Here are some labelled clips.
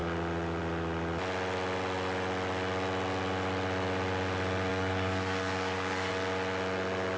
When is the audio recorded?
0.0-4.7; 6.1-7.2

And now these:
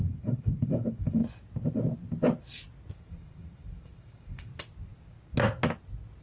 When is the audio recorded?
1.2-3.0; 4.5-6.2